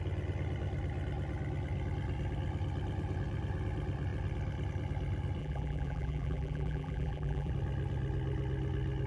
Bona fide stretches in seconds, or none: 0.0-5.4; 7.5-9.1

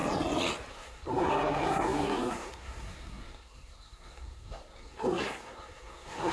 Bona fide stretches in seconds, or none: 0.0-0.7

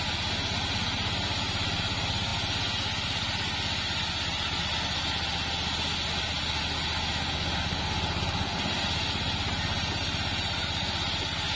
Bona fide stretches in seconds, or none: 0.0-11.6

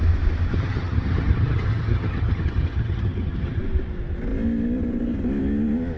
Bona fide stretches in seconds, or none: 0.0-0.5; 3.6-6.0

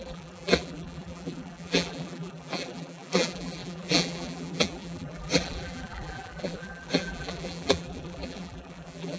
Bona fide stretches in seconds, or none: none

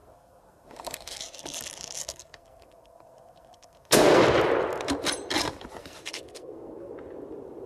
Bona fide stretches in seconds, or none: 1.2-2.0; 4.2-5.8; 6.9-7.7